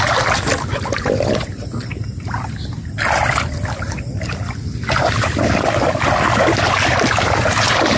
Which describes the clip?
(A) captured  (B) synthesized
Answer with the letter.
A